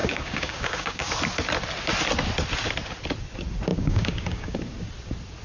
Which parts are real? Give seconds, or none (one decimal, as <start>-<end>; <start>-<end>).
1.1-3.7; 4.6-5.4